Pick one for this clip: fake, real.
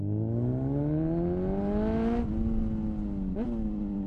real